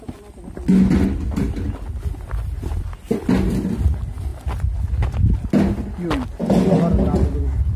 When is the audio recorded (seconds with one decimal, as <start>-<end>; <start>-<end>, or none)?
0.0-7.8